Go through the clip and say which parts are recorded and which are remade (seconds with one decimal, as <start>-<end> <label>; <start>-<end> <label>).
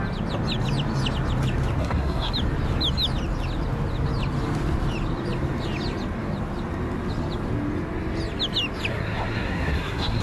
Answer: 0.0-1.8 recorded; 1.8-2.3 remade; 2.3-8.9 recorded; 8.9-10.2 remade